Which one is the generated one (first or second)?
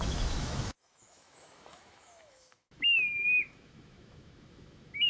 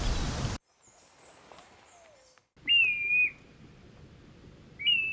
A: first